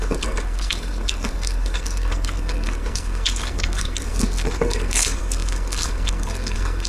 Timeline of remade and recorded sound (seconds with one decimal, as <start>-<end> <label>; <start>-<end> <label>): 0.0-6.9 remade